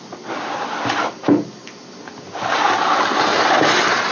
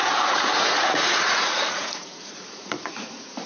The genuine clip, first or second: first